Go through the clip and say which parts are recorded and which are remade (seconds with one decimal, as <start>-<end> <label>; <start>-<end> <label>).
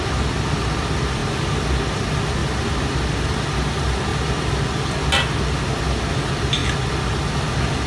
0.0-7.9 recorded